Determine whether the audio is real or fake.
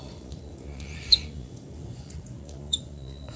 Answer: fake